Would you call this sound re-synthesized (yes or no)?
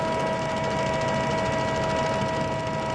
no